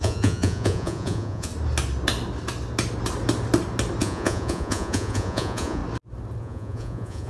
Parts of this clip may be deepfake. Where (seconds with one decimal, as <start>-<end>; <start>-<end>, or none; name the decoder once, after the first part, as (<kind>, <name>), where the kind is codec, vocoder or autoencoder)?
0.0-1.5 (vocoder, Vocos); 4.0-5.8; 6.4-7.3

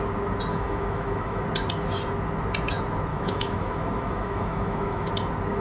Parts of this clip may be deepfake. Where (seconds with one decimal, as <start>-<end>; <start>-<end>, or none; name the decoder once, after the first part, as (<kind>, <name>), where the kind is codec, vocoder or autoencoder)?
0.5-1.4 (autoencoder, DAC-VAE); 3.1-5.1